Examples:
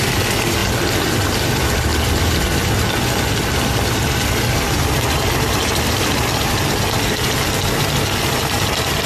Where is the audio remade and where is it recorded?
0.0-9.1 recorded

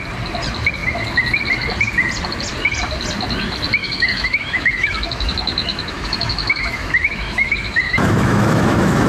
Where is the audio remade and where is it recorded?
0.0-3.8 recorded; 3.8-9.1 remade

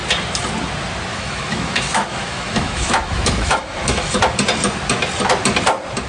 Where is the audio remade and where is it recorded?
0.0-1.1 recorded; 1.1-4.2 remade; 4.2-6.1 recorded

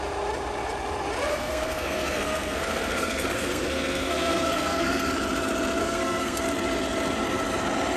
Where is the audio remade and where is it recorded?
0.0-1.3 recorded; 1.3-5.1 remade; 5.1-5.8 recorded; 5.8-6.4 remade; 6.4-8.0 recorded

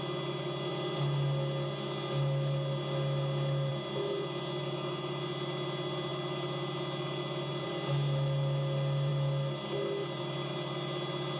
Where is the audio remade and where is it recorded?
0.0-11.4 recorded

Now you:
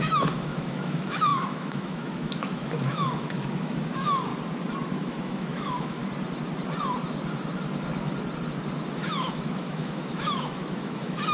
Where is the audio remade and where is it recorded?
0.0-4.3 remade; 4.3-5.0 recorded; 5.0-6.0 remade; 6.0-8.9 recorded; 8.9-11.3 remade